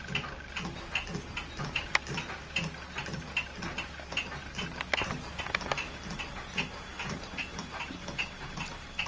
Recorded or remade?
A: recorded